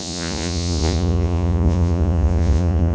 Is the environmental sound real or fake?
fake